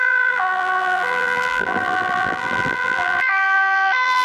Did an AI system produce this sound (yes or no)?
yes